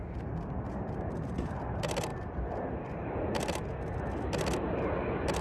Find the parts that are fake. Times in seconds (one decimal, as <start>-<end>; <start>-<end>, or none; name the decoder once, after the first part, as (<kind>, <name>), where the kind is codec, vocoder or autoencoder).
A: none